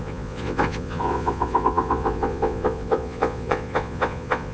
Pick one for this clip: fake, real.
fake